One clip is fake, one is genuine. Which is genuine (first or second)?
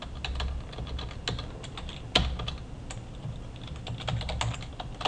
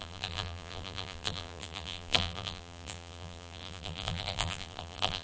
first